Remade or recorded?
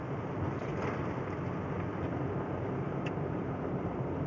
recorded